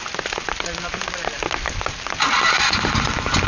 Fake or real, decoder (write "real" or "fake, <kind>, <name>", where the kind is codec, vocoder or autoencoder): real